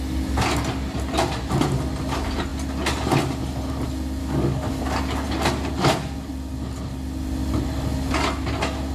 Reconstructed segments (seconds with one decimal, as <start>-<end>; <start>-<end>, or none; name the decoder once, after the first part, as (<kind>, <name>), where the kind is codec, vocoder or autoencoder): 4.2-4.8 (codec, DAC)